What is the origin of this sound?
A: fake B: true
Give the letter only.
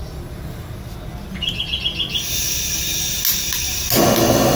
B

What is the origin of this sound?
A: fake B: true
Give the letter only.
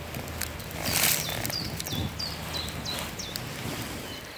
B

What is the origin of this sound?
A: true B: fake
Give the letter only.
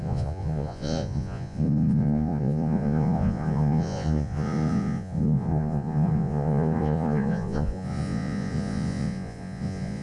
B